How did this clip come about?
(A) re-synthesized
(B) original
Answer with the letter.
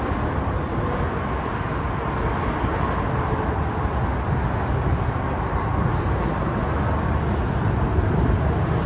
B